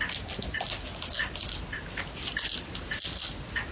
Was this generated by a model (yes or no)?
no